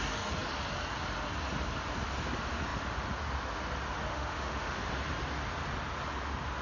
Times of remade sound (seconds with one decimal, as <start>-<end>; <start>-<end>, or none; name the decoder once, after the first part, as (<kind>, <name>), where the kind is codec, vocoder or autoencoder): 4.1-4.9 (autoencoder, DAC-VAE)